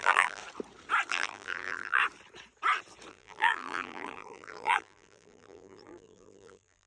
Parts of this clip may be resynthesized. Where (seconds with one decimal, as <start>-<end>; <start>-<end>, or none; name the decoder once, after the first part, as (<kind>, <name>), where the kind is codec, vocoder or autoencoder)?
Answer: 0.0-0.4 (vocoder, BigVGAN v2); 1.1-2.0; 3.1-6.9